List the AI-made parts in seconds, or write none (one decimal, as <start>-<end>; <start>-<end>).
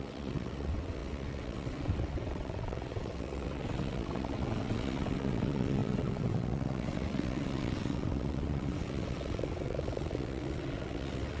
0.0-11.4